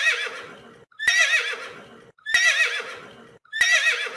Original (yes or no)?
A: yes